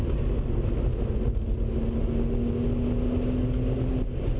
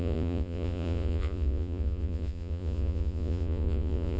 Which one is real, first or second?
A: first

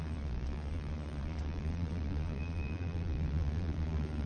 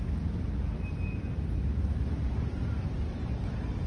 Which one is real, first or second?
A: second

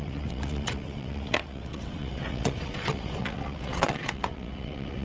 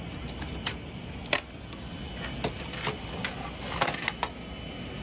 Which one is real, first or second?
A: second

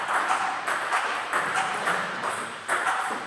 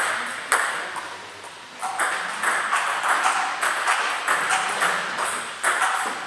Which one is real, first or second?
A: second